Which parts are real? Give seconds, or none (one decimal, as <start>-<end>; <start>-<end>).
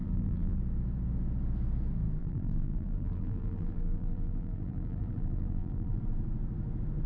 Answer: 0.6-2.2; 6.0-7.1